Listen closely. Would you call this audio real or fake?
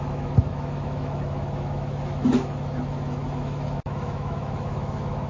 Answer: fake